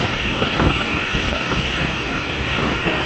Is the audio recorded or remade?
remade